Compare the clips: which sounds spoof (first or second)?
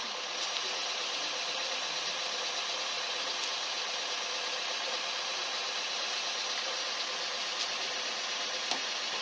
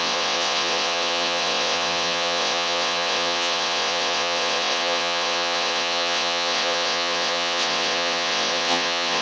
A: second